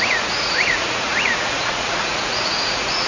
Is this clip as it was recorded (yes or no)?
no